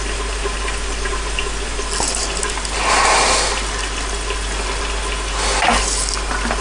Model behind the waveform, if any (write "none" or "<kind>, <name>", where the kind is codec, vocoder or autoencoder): none